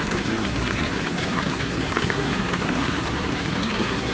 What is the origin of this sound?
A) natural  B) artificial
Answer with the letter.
B